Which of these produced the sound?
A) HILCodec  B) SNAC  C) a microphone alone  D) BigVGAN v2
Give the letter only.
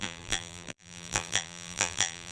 D